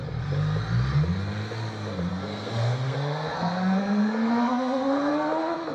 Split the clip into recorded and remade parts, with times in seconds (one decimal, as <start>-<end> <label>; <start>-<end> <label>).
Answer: 0.0-2.1 recorded; 2.1-5.1 remade; 5.1-5.7 recorded